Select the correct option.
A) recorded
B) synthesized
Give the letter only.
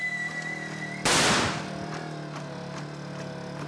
A